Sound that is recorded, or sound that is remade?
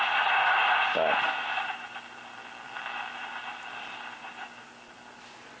recorded